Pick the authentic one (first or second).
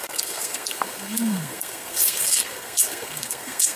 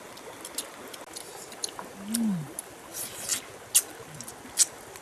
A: second